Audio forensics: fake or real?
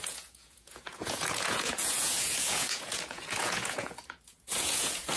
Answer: fake